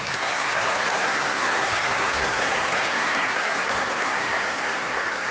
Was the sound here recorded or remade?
remade